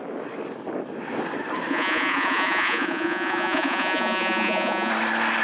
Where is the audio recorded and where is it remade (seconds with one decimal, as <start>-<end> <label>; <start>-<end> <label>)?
0.0-1.7 recorded; 1.7-4.9 remade; 4.9-5.4 recorded